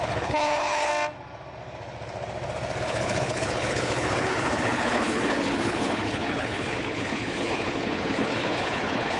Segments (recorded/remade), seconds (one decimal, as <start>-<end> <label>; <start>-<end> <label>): 0.0-0.9 remade; 0.9-2.8 recorded; 2.8-9.2 remade